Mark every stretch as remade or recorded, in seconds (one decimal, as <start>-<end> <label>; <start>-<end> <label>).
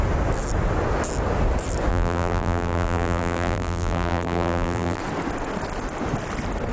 0.0-1.9 recorded; 1.9-5.0 remade; 5.0-6.7 recorded